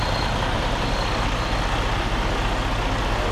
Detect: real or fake real